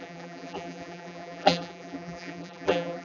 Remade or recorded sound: remade